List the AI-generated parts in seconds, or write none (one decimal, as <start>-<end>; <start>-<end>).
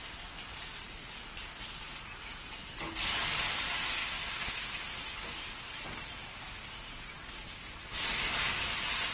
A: none